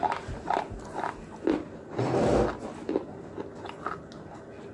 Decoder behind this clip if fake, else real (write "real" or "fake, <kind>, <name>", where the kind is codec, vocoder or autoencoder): real